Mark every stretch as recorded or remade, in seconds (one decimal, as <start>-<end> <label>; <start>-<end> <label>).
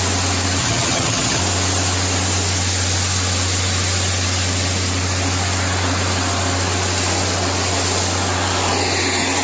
0.0-0.6 recorded; 0.6-1.4 remade; 1.4-9.4 recorded